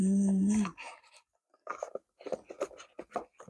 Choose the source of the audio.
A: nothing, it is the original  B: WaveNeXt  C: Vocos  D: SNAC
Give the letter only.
A